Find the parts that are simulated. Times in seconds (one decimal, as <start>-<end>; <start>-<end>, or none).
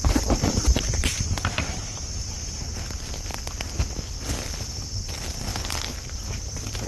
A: none